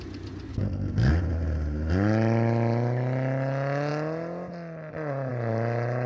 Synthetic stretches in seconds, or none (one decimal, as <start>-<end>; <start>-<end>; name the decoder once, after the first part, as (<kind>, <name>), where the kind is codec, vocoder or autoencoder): 0.5-1.1 (codec, SNAC)